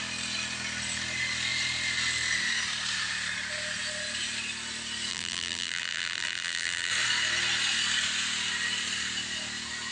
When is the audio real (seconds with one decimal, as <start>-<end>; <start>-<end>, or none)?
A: 0.0-5.1; 6.9-9.9